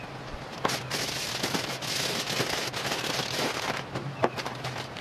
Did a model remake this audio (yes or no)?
no